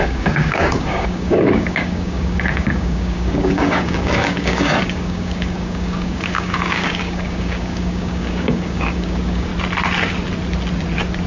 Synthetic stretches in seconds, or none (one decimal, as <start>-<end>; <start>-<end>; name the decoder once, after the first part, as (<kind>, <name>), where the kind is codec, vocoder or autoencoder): 0.0-9.5 (codec, DAC)